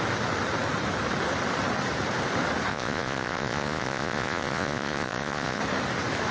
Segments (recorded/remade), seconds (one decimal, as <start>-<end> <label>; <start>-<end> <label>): 0.0-2.7 recorded; 2.7-5.6 remade; 5.6-6.3 recorded